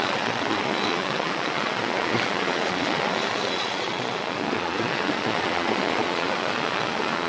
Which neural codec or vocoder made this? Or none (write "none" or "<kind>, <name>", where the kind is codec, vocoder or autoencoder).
vocoder, Vocos